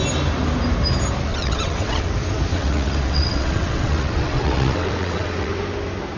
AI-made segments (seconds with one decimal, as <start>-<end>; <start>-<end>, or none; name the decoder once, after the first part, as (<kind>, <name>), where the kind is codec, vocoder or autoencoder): 1.3-2.1 (vocoder, WaveNeXt); 2.5-5.5